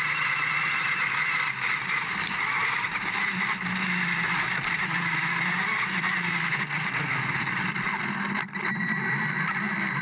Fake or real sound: real